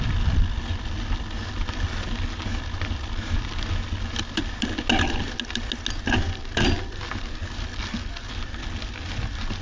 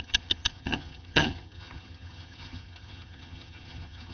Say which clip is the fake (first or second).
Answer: second